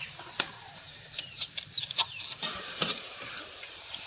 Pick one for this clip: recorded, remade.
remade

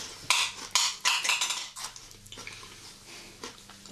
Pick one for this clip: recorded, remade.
recorded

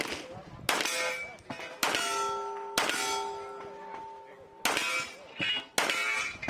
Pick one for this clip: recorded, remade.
recorded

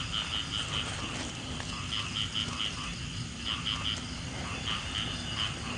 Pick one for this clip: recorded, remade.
recorded